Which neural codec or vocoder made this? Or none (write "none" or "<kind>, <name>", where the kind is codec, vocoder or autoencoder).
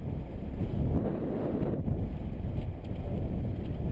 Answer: none